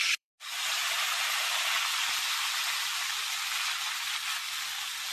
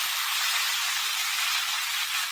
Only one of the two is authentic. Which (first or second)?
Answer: second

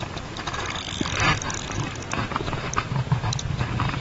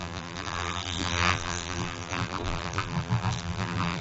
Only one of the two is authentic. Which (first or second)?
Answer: first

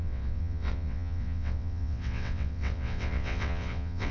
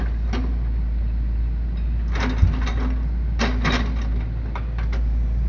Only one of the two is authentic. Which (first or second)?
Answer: second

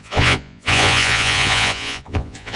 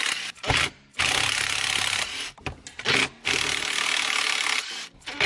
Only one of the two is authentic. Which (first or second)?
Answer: second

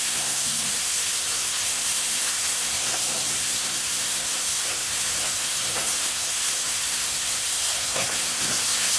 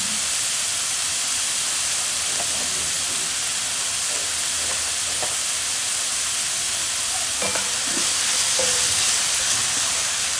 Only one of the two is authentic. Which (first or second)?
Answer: second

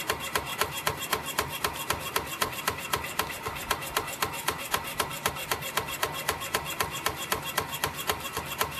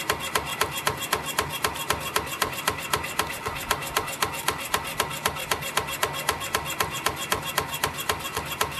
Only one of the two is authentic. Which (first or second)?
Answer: second